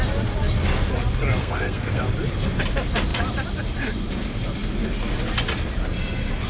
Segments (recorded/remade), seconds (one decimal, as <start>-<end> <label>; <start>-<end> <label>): 0.0-1.4 recorded; 1.4-2.0 remade; 2.0-6.5 recorded